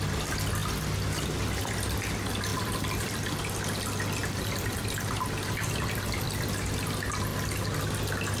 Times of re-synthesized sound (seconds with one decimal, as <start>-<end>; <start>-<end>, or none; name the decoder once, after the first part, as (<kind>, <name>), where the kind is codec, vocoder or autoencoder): 2.5-3.4 (vocoder, BigVGAN v2); 4.2-4.8